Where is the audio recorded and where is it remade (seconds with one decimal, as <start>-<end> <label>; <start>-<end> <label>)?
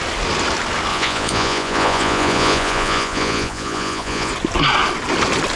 0.0-0.9 recorded; 0.9-4.3 remade; 4.3-5.6 recorded